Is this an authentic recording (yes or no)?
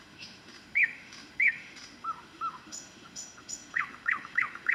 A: no